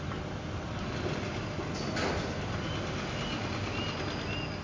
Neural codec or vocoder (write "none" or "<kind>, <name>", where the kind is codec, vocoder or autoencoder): none